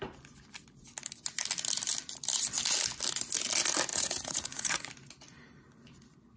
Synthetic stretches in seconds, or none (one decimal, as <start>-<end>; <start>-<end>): 3.9-4.9